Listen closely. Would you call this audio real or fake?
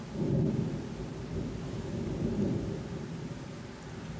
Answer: real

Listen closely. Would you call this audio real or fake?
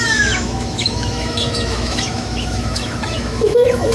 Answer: fake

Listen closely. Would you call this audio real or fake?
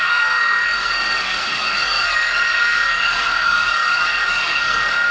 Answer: fake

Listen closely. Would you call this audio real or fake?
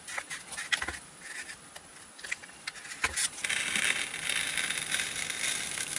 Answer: real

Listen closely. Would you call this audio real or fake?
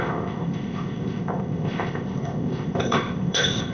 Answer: fake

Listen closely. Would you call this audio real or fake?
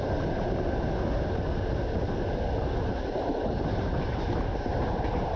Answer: real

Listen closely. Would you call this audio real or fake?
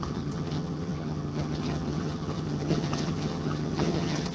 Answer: fake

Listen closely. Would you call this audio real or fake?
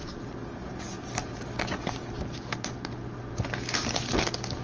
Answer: real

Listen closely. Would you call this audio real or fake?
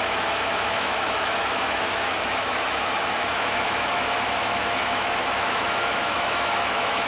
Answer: fake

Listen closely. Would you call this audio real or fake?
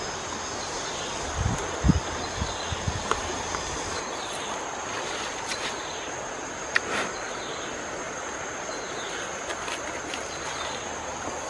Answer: real